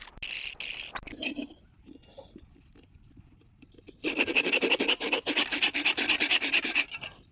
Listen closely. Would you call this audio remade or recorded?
recorded